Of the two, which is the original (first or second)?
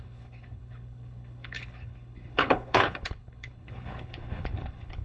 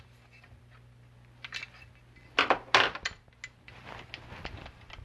second